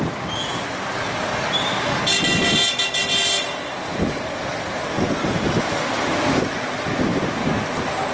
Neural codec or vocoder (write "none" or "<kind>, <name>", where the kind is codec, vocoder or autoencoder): none